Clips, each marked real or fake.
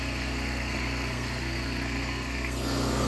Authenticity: fake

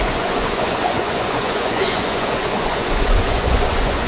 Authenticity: fake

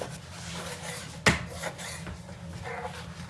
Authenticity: real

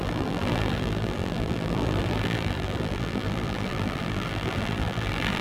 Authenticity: fake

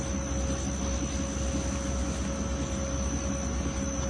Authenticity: real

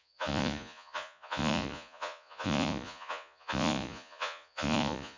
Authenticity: fake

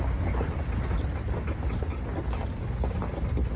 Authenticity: real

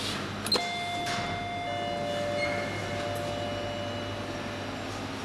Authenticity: real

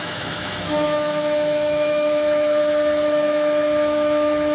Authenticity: fake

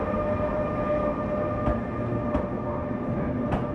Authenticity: real